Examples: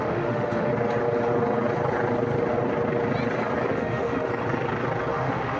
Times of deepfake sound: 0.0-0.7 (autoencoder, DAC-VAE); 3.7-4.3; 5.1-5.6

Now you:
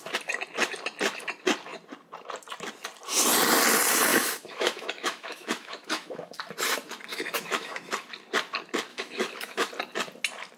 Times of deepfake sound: 4.1-6.4 (autoencoder, DAC-VAE); 7.1-7.9; 8.9-9.7